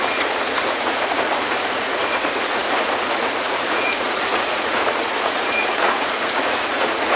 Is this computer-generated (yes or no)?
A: yes